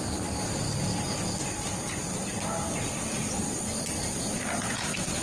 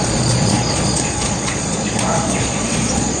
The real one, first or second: first